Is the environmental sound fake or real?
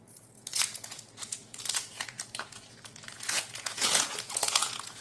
fake